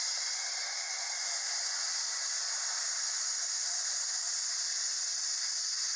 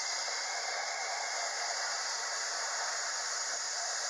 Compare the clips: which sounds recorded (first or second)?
first